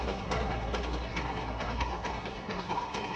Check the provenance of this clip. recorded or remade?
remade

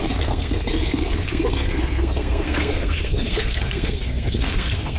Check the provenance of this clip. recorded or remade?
remade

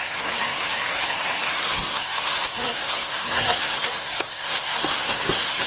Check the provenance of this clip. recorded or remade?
remade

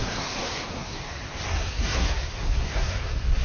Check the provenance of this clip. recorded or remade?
remade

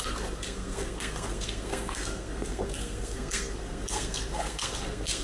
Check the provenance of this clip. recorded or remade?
remade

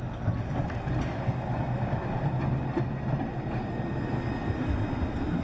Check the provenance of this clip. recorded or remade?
recorded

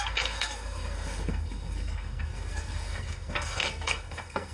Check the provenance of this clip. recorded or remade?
remade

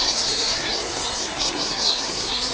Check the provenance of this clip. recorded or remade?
remade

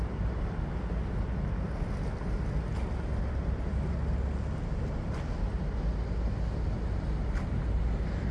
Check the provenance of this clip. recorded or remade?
recorded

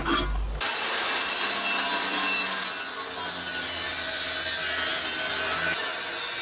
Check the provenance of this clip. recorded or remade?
recorded